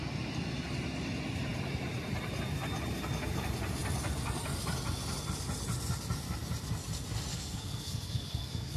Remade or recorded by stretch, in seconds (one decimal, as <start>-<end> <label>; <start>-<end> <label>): 0.0-7.3 recorded; 7.3-8.8 remade